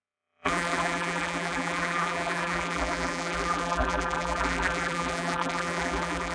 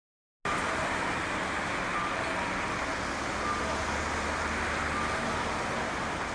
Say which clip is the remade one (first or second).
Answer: first